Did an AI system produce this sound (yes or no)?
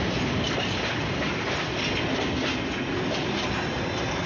no